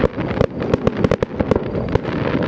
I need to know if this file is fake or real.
real